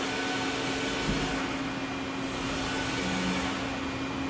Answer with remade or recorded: recorded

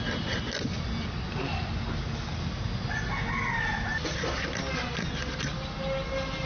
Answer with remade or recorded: recorded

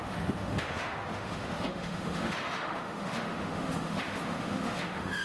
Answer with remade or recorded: remade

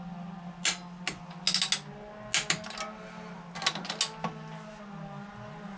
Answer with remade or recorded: recorded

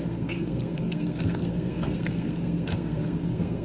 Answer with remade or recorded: remade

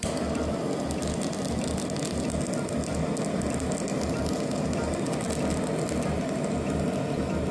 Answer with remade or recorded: recorded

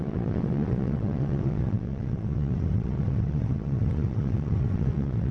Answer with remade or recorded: remade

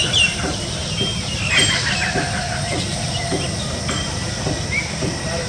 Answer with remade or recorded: recorded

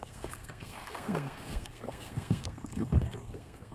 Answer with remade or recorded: remade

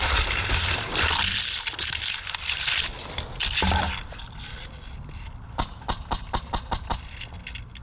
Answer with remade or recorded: recorded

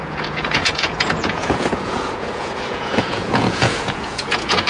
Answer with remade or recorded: remade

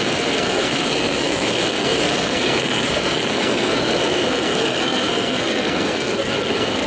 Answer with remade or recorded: remade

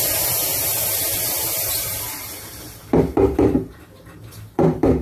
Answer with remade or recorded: remade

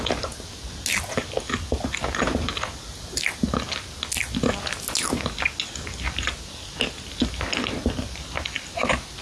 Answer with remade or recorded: recorded